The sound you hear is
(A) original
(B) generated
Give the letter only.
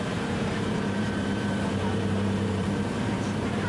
B